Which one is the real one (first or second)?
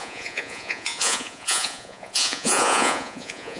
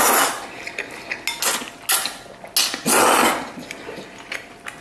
second